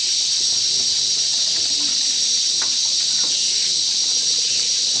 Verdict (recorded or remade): recorded